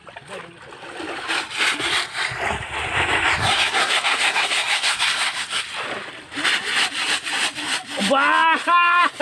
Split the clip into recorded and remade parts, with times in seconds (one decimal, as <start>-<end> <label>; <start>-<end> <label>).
0.0-3.4 recorded; 3.4-5.6 remade; 5.6-9.2 recorded